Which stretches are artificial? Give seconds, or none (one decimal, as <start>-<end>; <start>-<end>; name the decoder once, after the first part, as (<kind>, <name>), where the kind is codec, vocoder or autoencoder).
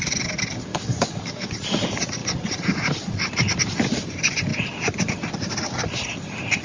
0.7-1.5 (codec, DAC)